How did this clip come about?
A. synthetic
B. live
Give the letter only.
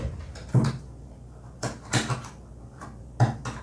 B